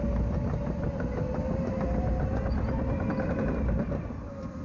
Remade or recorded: remade